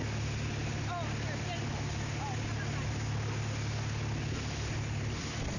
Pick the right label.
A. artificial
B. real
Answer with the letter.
B